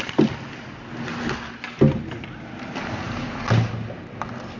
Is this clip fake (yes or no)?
no